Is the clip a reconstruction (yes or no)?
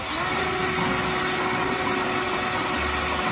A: no